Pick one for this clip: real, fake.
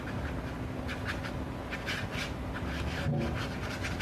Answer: real